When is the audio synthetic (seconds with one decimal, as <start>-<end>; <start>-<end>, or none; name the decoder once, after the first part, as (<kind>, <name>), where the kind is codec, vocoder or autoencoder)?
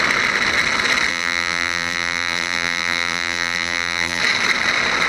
1.1-4.2 (vocoder, BigVGAN v2)